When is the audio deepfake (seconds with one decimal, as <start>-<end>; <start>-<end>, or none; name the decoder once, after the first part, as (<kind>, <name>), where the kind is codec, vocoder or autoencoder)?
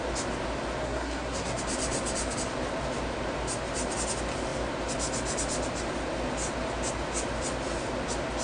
0.8-1.6 (codec, SNAC)